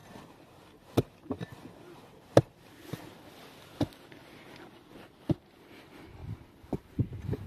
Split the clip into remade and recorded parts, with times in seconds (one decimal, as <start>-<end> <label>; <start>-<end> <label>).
0.0-7.5 recorded